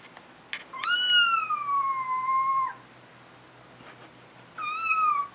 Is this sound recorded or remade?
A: recorded